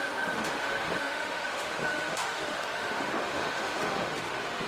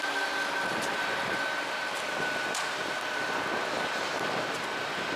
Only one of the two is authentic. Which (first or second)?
second